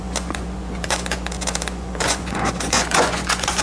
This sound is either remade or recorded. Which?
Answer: remade